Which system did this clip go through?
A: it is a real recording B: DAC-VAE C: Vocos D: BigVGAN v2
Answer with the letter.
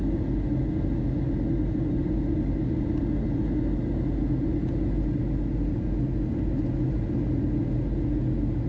A